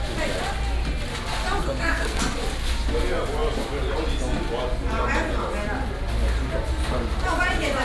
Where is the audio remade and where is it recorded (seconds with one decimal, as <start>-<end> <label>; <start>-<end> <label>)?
0.0-1.6 recorded; 1.6-2.2 remade; 2.2-7.8 recorded